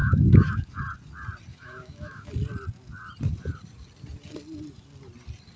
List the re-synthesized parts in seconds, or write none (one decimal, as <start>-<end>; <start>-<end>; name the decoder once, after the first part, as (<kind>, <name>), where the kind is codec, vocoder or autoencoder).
0.0-0.8 (autoencoder, DAC-VAE); 1.5-2.3